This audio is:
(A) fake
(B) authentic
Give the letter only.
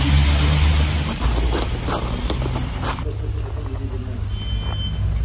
B